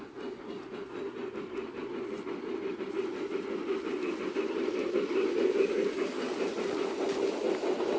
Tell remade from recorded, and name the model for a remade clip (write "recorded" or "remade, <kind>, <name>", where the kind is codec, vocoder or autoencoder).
recorded